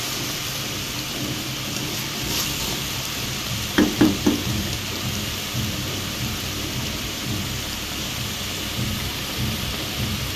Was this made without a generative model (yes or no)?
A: no